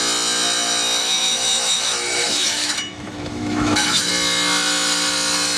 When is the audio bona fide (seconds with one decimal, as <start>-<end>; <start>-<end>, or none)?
0.0-1.0; 4.1-5.6